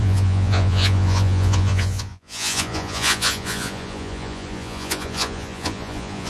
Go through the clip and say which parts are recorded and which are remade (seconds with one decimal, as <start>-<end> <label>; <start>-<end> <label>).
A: 0.0-6.3 remade